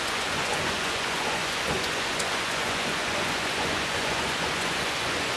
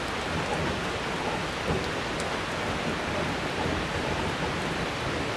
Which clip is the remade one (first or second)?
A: first